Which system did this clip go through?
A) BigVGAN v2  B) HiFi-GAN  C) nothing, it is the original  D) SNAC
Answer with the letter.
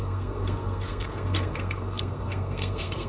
D